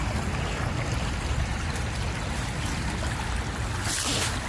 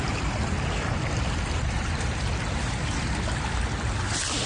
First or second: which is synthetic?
second